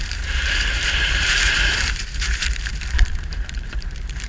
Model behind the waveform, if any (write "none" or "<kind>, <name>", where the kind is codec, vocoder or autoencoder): vocoder, BigVGAN v2